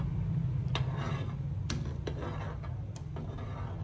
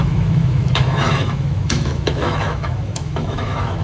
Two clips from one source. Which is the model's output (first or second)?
second